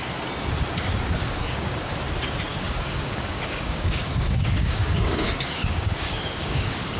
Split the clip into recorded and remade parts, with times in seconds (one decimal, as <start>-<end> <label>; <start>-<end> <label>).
0.0-1.4 recorded; 1.4-1.9 remade; 1.9-2.5 recorded; 2.5-7.0 remade